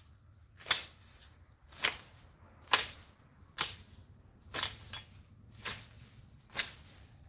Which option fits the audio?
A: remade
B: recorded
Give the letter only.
A